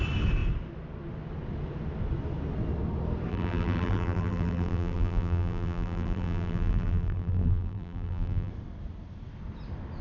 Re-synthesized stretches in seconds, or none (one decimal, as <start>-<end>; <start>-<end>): 3.3-8.5